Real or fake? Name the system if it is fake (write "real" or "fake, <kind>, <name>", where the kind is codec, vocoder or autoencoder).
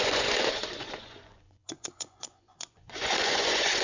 fake, vocoder, Vocos